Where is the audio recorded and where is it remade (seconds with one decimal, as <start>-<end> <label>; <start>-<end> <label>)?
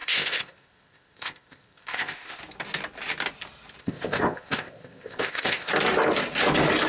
0.0-2.4 remade; 2.4-3.8 recorded; 3.8-5.7 remade; 5.7-6.9 recorded